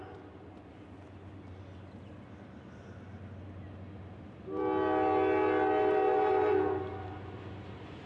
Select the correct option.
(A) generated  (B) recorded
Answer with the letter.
B